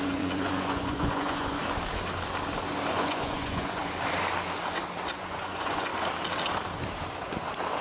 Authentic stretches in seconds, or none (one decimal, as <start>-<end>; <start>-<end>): 1.6-2.9; 3.8-5.1; 5.9-7.8